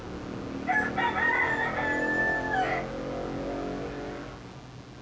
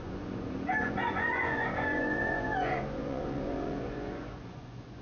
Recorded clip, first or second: first